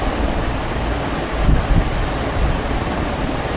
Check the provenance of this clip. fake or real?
real